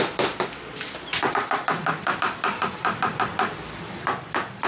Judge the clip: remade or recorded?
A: remade